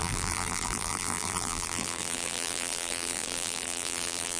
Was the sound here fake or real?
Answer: fake